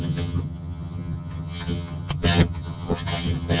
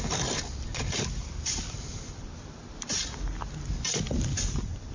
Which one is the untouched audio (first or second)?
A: second